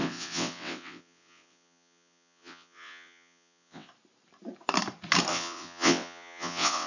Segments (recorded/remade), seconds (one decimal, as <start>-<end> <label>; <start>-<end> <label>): 0.0-3.9 remade; 3.9-5.3 recorded; 5.3-6.9 remade